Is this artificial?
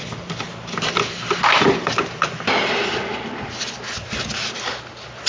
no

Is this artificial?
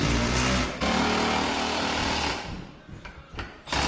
no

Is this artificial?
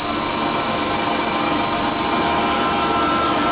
no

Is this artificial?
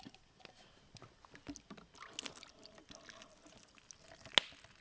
no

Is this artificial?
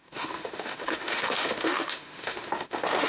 yes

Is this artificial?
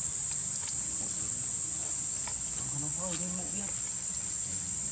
no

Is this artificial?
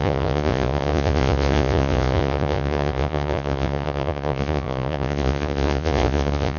yes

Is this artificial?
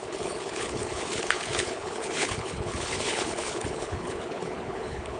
yes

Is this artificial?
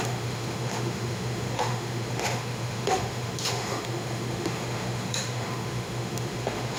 yes